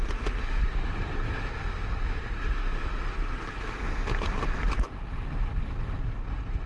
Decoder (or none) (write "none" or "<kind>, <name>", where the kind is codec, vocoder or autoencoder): none